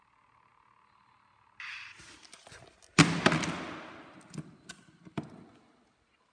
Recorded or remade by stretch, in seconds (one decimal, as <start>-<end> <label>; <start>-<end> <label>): 0.0-6.3 recorded

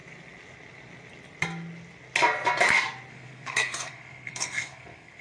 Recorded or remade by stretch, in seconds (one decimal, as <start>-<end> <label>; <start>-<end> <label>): 0.0-3.1 recorded; 3.1-5.2 remade